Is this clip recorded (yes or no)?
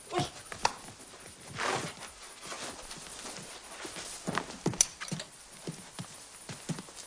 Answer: yes